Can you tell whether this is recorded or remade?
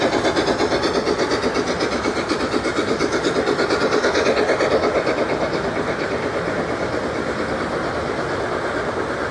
recorded